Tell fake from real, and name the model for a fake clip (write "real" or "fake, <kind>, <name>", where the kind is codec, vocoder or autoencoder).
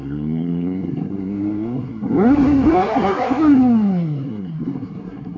fake, codec, SNAC